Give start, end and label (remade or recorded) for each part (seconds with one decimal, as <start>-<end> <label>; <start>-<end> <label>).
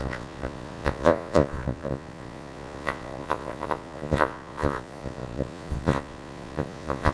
0.0-7.1 remade